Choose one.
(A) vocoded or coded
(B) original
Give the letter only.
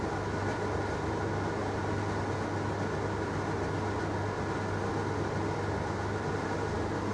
B